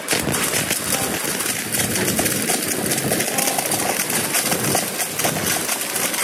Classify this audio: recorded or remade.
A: recorded